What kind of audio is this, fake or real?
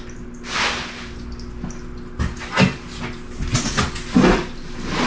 real